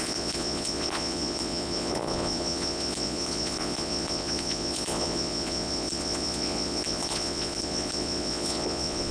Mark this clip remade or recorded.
remade